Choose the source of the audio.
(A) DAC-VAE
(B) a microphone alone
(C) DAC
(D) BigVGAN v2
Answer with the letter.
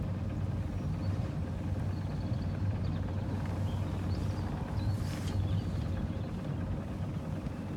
B